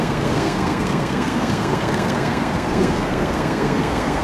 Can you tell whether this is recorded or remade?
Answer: remade